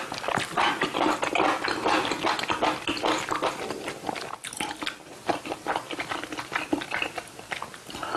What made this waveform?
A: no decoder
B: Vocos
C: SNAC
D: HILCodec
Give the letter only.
A